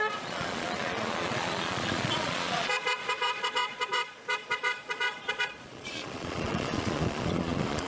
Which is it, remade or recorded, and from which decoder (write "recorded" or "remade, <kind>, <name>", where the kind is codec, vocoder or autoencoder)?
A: remade, vocoder, Vocos